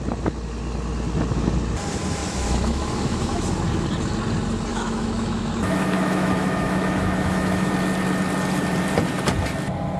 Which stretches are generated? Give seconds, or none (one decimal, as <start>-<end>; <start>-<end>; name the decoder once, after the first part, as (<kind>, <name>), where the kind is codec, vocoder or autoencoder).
2.2-3.6 (autoencoder, DAC-VAE); 4.7-7.7